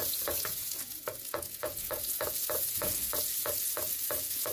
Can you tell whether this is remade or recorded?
remade